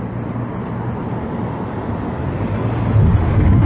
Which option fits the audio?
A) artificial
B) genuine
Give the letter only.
B